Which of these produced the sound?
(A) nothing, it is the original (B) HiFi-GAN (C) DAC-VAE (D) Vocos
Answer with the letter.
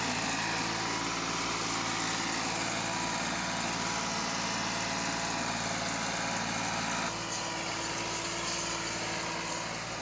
A